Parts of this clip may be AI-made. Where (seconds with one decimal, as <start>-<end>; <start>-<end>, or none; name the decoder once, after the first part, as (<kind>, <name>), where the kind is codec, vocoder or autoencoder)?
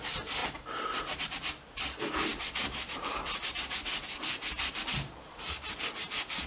0.4-1.5 (vocoder, BigVGAN v2)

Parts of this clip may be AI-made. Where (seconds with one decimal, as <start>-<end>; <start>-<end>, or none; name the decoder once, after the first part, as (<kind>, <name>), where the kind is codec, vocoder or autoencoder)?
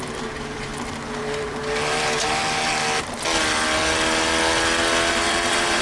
0.0-0.7 (vocoder, BigVGAN v2); 1.2-1.6; 5.1-5.8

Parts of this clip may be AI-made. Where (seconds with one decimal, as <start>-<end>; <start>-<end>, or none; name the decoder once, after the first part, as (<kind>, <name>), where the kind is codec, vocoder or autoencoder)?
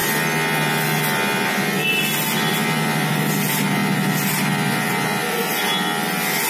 none